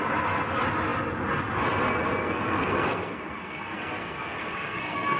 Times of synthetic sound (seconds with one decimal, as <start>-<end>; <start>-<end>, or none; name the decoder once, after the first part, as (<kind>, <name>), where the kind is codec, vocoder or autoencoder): 2.2-5.2 (codec, SNAC)